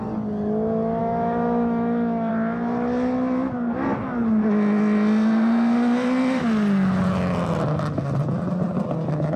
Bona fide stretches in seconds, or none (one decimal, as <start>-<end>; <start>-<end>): 0.0-1.0; 2.3-9.4